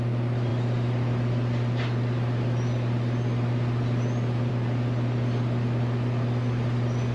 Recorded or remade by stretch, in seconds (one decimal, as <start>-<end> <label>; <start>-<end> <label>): 0.0-7.1 recorded